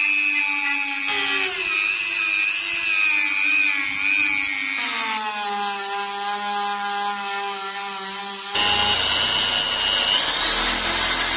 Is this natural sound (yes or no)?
yes